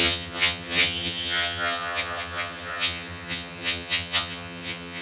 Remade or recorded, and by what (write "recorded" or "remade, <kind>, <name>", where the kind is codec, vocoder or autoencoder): remade, vocoder, HiFi-GAN